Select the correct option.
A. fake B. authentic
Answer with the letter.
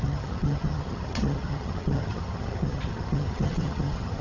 A